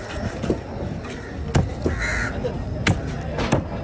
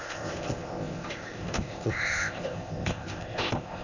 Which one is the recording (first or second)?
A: first